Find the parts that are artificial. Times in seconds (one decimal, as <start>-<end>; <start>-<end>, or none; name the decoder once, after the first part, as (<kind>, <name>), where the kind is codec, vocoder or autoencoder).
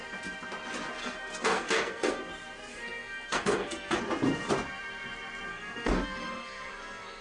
1.0-2.2 (codec, SNAC); 2.7-4.0; 5.5-7.2